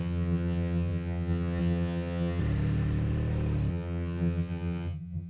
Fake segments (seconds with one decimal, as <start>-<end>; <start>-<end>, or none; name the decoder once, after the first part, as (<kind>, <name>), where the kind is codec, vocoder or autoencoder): 0.0-2.4 (vocoder, HiFi-GAN); 3.7-5.3